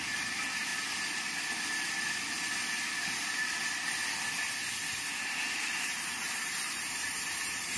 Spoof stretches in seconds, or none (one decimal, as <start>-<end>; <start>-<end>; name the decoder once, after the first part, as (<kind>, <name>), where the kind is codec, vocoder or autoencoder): 0.0-0.7 (vocoder, BigVGAN v2); 5.4-7.8

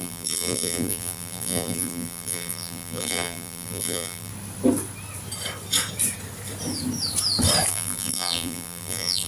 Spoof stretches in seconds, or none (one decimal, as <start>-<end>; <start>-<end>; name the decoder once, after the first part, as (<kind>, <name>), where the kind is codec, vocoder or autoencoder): 0.0-4.3 (vocoder, BigVGAN v2); 7.7-9.3

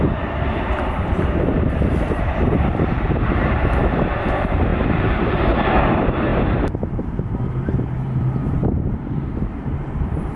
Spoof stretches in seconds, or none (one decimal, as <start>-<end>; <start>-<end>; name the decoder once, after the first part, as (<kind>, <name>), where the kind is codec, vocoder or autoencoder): 0.0-10.4 (vocoder, BigVGAN v2)

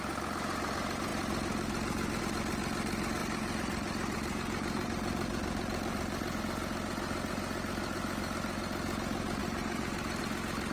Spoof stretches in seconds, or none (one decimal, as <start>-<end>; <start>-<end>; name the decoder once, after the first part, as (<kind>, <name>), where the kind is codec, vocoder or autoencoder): 3.2-6.4 (vocoder, BigVGAN v2); 9.4-10.2